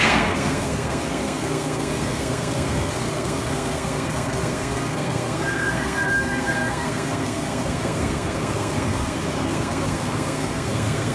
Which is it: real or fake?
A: fake